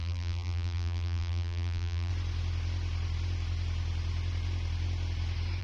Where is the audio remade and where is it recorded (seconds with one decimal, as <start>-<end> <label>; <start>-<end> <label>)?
0.0-2.1 remade; 2.1-5.6 recorded